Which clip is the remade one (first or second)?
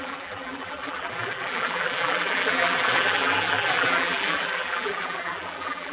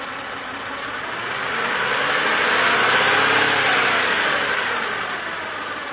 first